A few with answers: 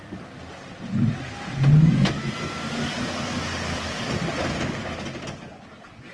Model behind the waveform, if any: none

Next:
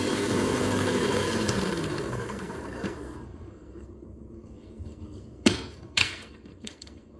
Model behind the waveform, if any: codec, SNAC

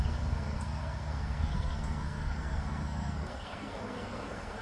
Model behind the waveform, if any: codec, SNAC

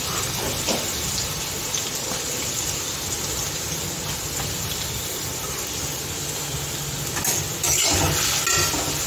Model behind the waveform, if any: none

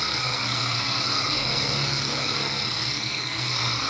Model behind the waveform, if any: codec, SNAC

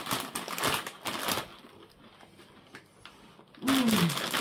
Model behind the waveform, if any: none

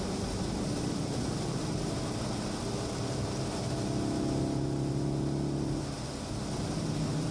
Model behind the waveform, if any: none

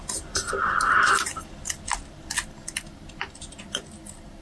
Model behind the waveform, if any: none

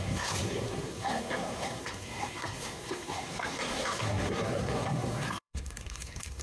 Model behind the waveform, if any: codec, SNAC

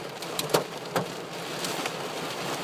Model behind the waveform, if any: none